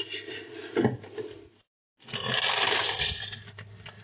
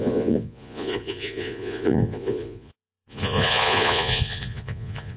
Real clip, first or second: first